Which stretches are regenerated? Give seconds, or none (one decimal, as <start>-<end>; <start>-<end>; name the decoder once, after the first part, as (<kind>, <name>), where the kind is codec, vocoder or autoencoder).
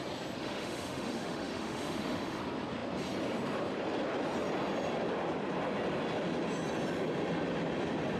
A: 0.4-2.4 (autoencoder, DAC-VAE)